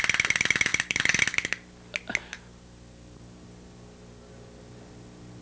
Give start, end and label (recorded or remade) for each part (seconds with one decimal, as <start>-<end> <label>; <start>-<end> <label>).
0.0-5.4 recorded